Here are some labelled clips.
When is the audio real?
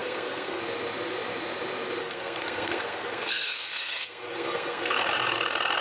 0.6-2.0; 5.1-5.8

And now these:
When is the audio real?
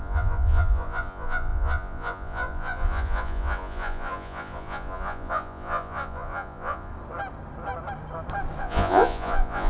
6.9-8.6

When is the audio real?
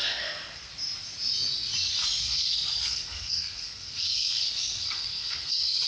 0.7-2.2